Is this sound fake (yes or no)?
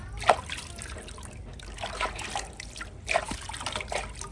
no